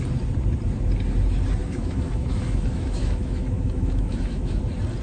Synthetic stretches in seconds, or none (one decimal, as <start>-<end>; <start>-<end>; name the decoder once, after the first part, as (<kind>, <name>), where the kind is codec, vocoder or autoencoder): 1.6-4.6 (autoencoder, DAC-VAE)